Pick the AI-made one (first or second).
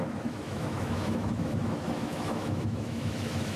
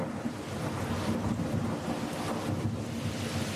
first